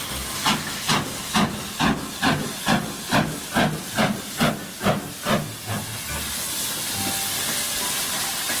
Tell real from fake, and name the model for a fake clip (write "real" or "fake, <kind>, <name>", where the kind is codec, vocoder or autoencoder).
real